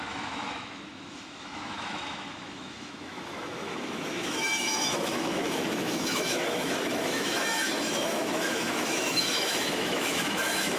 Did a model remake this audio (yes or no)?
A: yes